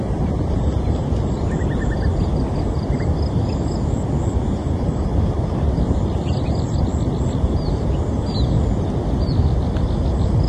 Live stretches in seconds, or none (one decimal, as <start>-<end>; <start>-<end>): 0.0-4.6; 6.5-10.5